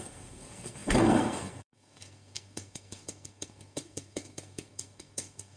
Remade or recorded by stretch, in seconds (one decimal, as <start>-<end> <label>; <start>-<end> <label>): 0.0-5.6 remade